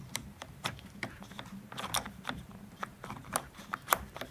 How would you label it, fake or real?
fake